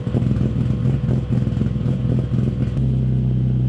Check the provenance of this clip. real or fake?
real